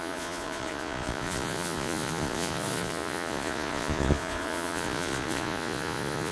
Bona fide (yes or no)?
no